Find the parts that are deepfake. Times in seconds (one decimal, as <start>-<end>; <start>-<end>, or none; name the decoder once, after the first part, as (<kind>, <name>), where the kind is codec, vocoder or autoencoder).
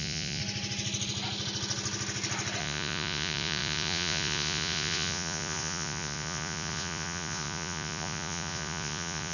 0.0-0.4 (vocoder, Vocos); 2.6-9.3